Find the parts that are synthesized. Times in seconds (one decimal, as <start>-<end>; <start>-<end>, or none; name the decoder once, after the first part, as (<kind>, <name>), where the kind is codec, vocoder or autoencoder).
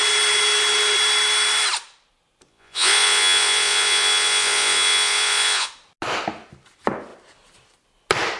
2.5-5.7 (vocoder, Vocos)